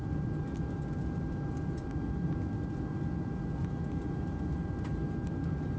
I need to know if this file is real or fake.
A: real